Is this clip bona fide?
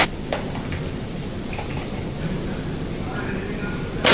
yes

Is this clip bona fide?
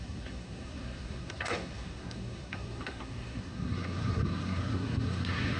no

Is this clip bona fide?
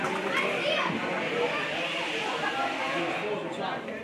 yes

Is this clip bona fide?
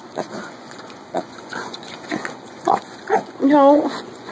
no